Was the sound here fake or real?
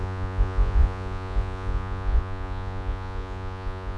fake